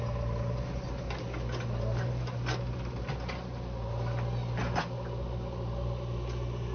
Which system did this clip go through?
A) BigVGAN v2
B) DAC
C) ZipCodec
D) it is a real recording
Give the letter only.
D